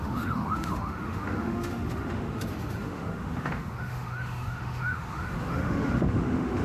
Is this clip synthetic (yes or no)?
yes